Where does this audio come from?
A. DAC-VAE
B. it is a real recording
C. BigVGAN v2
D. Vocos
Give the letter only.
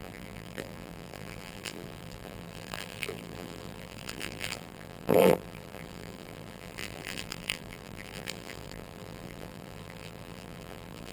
C